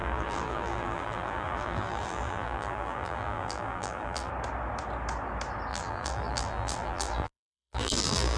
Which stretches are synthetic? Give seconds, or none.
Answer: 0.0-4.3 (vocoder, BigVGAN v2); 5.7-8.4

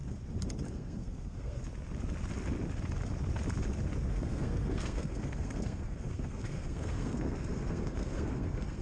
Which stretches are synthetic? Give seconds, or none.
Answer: 0.7-1.6 (codec, SNAC); 4.1-8.8

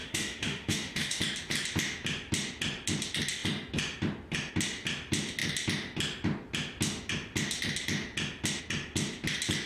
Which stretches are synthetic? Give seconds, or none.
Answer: 0.0-1.2 (autoencoder, DAC-VAE)

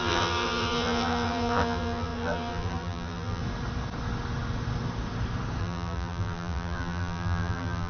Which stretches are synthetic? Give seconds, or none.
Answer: 0.0-3.4 (vocoder, BigVGAN v2); 5.6-7.9

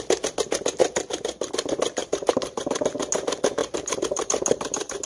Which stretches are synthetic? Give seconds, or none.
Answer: 0.8-1.5 (vocoder, BigVGAN v2); 2.0-2.8; 3.6-5.1

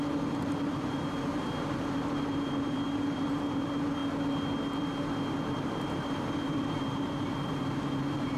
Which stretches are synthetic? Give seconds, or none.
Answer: 0.0-4.0 (vocoder, BigVGAN v2); 5.5-8.4